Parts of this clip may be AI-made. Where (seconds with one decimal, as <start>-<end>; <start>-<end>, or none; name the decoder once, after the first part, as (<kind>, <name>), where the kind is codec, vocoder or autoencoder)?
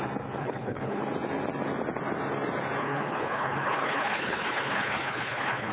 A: 0.4-1.0 (codec, HILCodec); 2.8-5.7